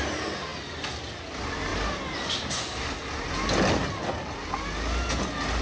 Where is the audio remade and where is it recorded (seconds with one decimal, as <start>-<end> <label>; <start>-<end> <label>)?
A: 0.0-5.6 recorded